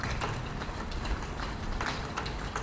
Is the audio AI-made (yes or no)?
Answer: no